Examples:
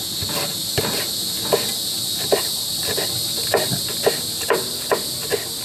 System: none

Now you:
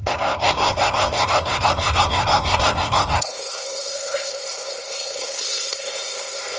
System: codec, SNAC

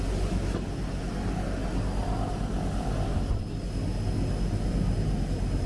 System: none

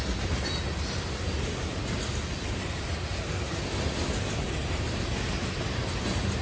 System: none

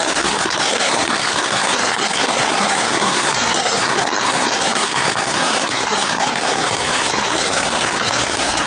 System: codec, SNAC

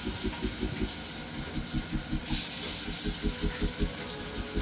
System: none